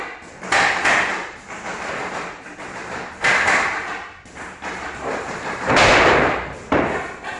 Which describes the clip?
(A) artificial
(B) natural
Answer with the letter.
A